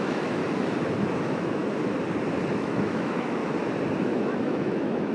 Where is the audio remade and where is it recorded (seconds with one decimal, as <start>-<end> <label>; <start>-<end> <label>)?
0.0-0.4 remade; 0.4-1.2 recorded; 1.2-1.6 remade; 1.6-2.5 recorded; 2.5-3.4 remade; 3.4-4.0 recorded; 4.0-5.1 remade